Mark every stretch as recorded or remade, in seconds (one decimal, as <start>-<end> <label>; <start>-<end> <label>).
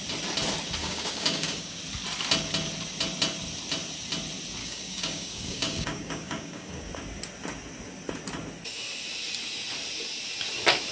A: 0.0-0.8 recorded; 0.8-1.8 remade; 1.8-4.6 recorded; 4.6-6.9 remade; 6.9-10.9 recorded